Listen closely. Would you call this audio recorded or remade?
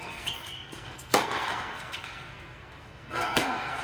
remade